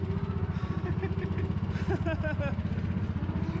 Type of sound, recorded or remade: recorded